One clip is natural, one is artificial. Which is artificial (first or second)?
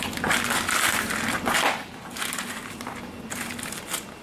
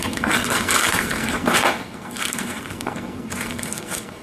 second